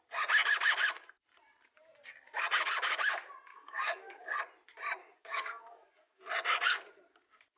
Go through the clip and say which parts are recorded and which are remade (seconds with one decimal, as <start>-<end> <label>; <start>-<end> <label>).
0.0-3.5 recorded; 3.5-4.2 remade; 4.2-5.0 recorded; 5.0-6.2 remade; 6.2-7.6 recorded